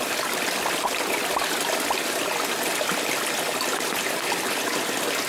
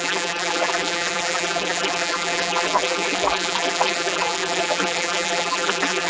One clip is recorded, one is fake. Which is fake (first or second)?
second